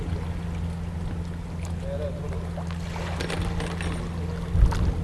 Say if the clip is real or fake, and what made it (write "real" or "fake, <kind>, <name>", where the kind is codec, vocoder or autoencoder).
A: real